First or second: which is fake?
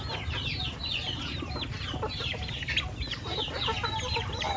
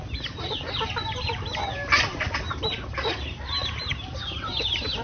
second